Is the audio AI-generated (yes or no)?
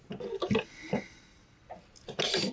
no